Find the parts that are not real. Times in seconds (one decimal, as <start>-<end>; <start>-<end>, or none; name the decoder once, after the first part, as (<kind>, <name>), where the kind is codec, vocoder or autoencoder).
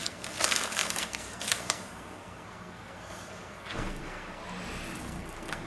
0.0-4.4 (codec, SNAC); 5.0-5.7